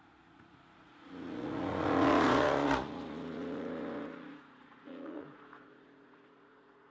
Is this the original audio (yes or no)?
no